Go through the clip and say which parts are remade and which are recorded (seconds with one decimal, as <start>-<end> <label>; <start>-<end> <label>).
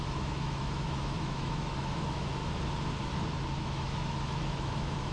0.0-2.4 remade; 2.4-3.6 recorded; 3.6-5.1 remade